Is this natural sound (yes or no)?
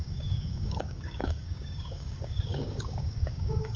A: no